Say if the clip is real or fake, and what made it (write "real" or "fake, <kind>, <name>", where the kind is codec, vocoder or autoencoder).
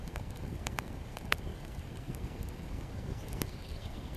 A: fake, codec, SNAC